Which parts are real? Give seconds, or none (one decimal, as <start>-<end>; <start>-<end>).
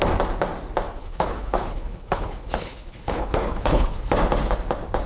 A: 0.0-1.0; 4.1-5.1